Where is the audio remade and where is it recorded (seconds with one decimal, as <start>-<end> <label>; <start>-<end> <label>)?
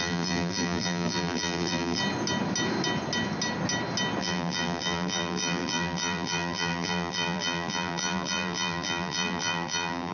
0.0-2.0 remade; 2.0-4.2 recorded; 4.2-10.1 remade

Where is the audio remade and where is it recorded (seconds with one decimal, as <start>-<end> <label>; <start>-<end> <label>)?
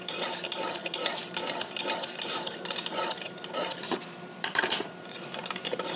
0.0-6.0 remade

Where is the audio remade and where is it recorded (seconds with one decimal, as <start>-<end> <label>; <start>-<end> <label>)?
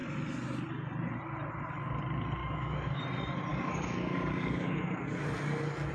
0.0-2.4 recorded; 2.4-3.0 remade; 3.0-3.5 recorded; 3.5-5.9 remade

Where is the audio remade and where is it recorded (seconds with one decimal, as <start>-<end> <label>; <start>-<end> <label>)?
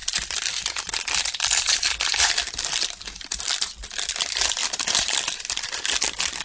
0.0-3.8 remade; 3.8-4.6 recorded; 4.6-5.2 remade; 5.2-6.4 recorded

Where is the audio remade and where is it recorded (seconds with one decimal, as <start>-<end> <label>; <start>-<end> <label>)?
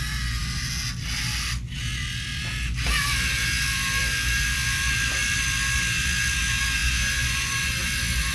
0.0-6.8 recorded; 6.8-7.7 remade; 7.7-8.3 recorded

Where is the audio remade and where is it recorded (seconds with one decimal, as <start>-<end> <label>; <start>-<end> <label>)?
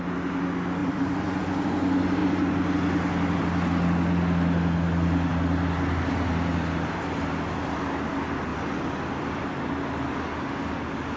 0.0-0.8 recorded; 0.8-1.4 remade; 1.4-8.5 recorded; 8.5-10.1 remade; 10.1-11.2 recorded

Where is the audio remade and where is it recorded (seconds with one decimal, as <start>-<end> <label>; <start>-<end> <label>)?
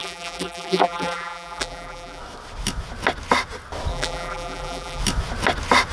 0.0-2.2 remade; 2.2-3.9 recorded; 3.9-5.0 remade; 5.0-5.9 recorded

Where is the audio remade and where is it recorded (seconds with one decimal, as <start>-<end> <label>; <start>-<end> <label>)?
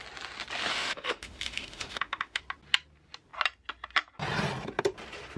0.0-0.7 recorded; 0.7-2.4 remade; 2.4-5.4 recorded